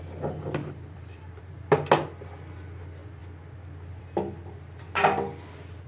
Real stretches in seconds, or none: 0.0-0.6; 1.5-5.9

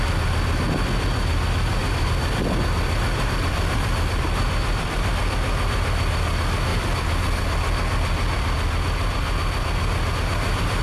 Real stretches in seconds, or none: 0.0-1.8; 5.1-6.7; 10.1-10.8